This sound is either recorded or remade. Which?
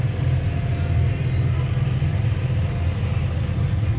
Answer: recorded